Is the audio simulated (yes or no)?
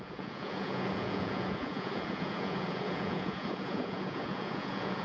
yes